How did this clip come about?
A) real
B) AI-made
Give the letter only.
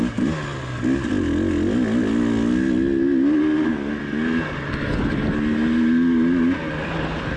A